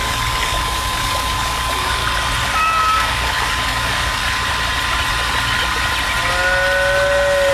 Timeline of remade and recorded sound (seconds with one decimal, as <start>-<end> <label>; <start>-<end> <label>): 0.0-2.0 remade; 2.0-2.6 recorded; 2.6-4.2 remade; 4.2-7.5 recorded